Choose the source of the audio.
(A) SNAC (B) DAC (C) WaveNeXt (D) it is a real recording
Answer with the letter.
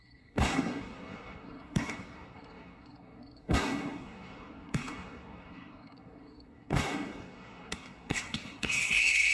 A